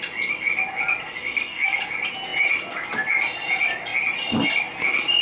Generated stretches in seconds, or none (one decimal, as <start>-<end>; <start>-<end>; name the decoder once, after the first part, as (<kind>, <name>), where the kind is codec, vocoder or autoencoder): 1.2-1.8 (codec, SNAC)